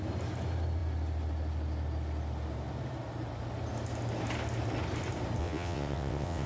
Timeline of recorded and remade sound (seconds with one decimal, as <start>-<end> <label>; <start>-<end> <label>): 0.0-5.4 recorded; 5.4-6.5 remade